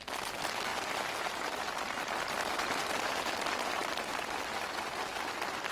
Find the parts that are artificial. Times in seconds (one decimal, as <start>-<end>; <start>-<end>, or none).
0.0-5.7